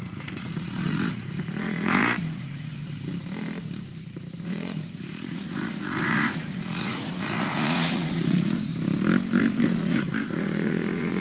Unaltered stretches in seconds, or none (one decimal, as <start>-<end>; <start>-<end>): 2.8-4.4; 8.7-9.4